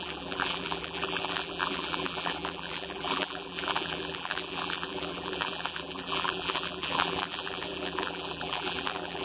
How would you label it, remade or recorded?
remade